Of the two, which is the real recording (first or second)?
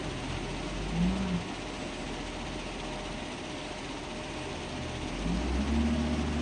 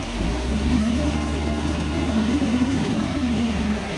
first